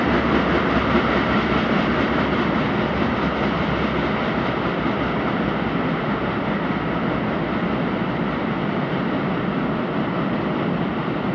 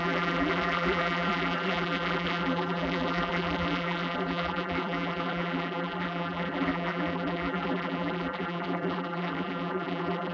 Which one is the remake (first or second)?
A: second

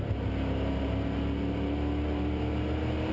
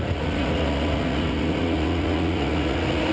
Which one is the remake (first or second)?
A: second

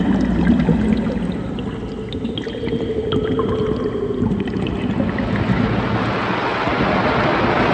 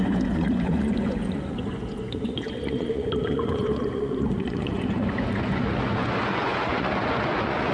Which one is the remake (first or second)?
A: second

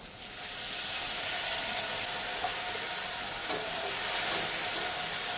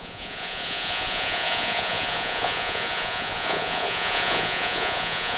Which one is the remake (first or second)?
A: second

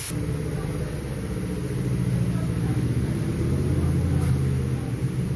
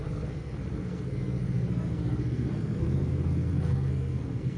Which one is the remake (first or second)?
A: second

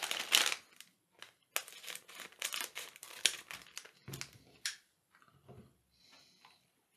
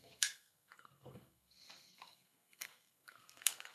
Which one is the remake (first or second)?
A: second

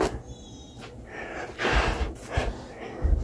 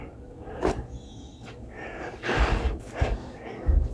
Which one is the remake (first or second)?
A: second